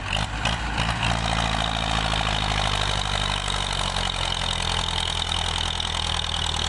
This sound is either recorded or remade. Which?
recorded